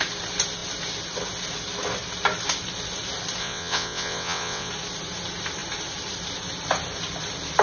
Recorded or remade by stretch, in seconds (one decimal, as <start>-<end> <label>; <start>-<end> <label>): 0.0-3.4 recorded; 3.4-4.7 remade; 4.7-7.6 recorded